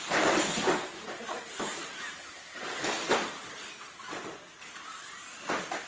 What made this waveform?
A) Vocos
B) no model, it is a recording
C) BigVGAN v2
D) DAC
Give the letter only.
C